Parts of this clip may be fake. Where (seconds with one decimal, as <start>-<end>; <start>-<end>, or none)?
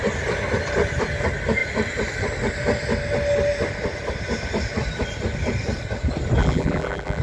6.4-7.2